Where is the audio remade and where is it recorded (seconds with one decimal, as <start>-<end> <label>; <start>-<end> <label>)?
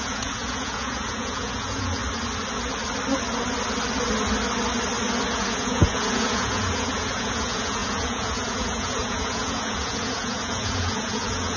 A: 0.0-2.0 remade; 2.0-5.3 recorded; 5.3-11.6 remade